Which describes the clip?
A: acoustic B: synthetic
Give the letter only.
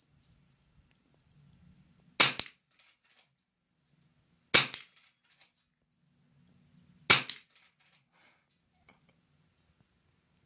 A